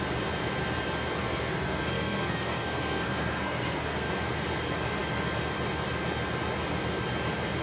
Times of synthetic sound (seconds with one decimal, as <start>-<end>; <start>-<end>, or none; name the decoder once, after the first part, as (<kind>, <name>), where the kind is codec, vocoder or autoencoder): 1.2-4.1 (codec, SNAC)